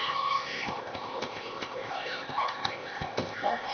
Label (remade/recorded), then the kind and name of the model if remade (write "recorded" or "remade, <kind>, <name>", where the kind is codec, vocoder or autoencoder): remade, codec, ZipCodec